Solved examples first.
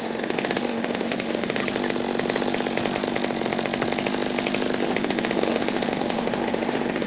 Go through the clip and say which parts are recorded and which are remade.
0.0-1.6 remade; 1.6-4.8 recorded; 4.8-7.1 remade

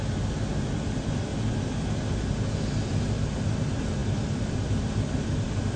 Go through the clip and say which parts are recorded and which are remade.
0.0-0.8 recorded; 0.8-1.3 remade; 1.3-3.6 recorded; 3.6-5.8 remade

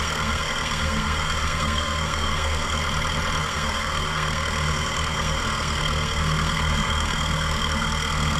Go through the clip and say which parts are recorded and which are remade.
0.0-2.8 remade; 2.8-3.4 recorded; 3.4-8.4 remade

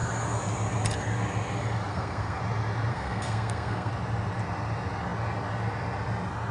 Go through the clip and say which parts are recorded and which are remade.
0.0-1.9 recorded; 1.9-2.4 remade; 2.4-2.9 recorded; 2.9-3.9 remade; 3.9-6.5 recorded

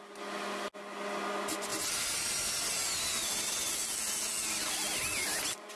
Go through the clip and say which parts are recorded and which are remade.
0.0-5.8 recorded

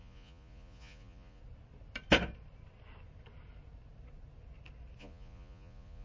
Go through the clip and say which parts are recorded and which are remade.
0.0-1.4 remade; 1.4-5.0 recorded; 5.0-6.0 remade

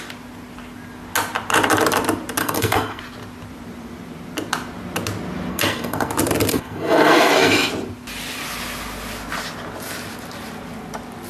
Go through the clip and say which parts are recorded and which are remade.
0.0-2.4 recorded; 2.4-3.0 remade; 3.0-5.5 recorded; 5.5-6.1 remade; 6.1-6.5 recorded; 6.5-7.7 remade; 7.7-11.3 recorded

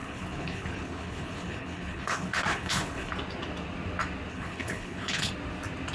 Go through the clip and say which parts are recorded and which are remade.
0.0-3.1 remade; 3.1-4.3 recorded; 4.3-5.3 remade; 5.3-5.9 recorded